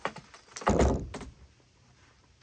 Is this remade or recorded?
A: recorded